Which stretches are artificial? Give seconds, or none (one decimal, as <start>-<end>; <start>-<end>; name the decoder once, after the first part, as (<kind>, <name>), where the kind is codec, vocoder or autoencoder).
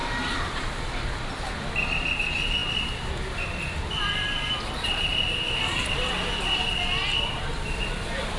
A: 0.0-1.7 (vocoder, BigVGAN v2); 2.6-4.0; 5.1-6.1